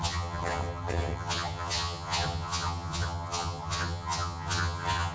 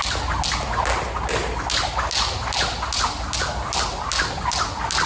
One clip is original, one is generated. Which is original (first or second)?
second